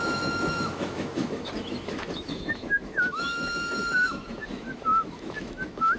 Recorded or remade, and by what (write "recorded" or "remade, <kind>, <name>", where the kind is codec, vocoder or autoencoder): remade, autoencoder, DAC-VAE